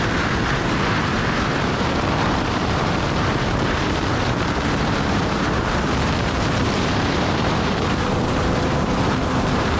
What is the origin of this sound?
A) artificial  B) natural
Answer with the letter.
A